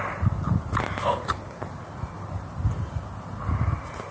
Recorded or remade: recorded